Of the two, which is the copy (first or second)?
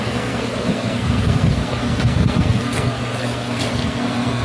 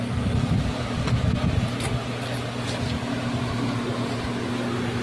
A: first